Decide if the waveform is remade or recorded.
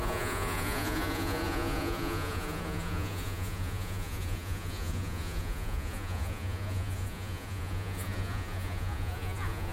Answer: remade